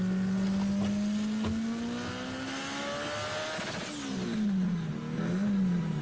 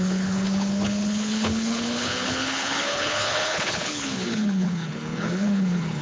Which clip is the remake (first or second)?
second